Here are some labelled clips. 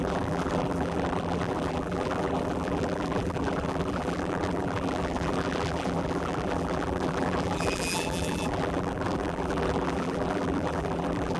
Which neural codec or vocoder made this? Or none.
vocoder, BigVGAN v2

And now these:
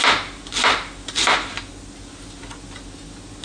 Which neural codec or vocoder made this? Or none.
none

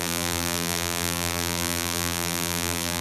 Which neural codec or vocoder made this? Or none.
vocoder, BigVGAN v2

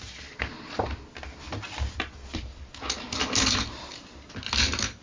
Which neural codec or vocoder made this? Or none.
none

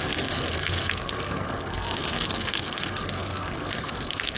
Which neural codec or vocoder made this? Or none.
codec, SNAC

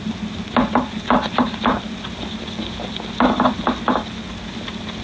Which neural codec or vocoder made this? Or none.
none